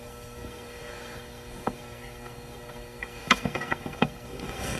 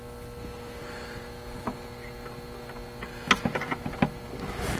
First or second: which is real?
second